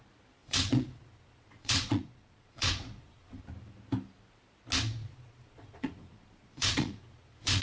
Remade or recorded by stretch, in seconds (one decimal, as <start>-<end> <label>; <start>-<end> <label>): 0.0-0.4 recorded; 0.4-3.4 remade; 3.4-5.0 recorded; 5.0-7.6 remade